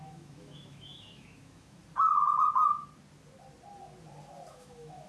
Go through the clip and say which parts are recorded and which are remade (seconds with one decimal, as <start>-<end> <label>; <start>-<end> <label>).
0.0-1.8 remade; 1.8-4.5 recorded; 4.5-5.1 remade